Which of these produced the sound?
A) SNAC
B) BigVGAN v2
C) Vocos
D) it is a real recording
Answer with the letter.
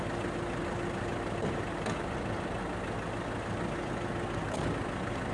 D